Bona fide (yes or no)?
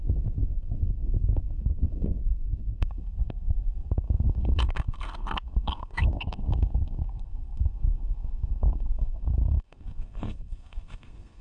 no